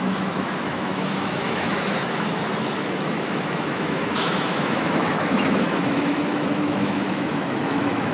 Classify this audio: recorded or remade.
remade